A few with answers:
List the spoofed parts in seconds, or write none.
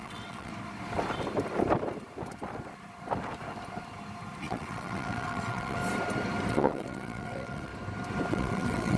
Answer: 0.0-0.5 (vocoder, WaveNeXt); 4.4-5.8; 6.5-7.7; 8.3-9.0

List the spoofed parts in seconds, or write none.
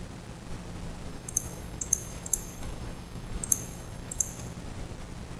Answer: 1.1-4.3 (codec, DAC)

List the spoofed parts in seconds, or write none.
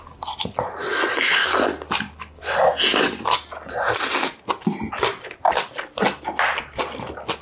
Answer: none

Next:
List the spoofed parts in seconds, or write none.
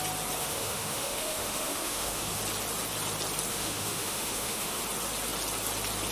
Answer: 0.4-2.4 (autoencoder, DAC-VAE); 3.5-4.8